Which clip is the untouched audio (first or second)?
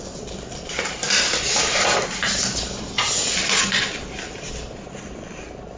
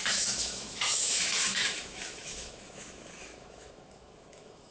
first